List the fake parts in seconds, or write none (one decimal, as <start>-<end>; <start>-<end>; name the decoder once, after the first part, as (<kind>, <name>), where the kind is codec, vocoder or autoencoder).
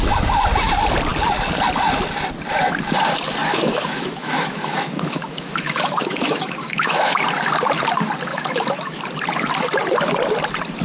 3.4-7.2 (autoencoder, DAC-VAE); 8.3-9.0